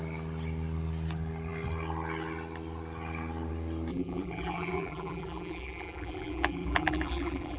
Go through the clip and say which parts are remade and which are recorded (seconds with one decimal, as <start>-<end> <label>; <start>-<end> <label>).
0.0-3.9 recorded; 3.9-7.6 remade